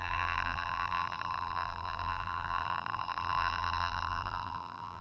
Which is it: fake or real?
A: fake